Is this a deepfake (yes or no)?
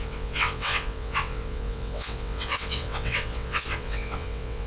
yes